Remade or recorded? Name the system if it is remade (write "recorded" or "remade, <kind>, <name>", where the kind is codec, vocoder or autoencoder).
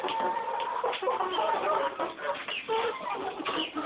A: recorded